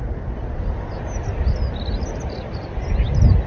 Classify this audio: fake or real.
real